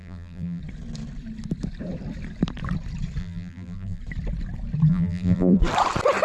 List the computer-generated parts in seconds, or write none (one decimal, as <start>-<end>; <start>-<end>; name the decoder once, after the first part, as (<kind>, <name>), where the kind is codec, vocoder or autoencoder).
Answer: 0.0-0.6 (vocoder, BigVGAN v2); 3.2-4.0; 4.9-5.6